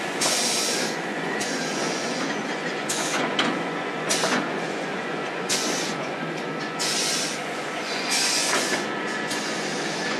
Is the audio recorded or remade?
remade